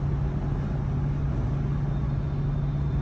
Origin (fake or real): real